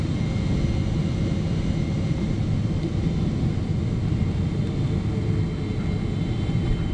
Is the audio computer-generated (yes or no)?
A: no